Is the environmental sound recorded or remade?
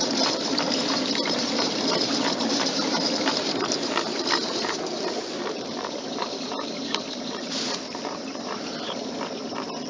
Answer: remade